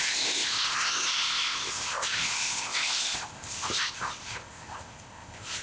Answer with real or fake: fake